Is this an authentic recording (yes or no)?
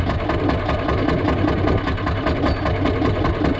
yes